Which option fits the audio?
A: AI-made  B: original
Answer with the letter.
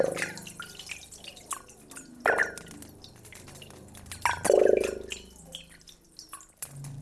B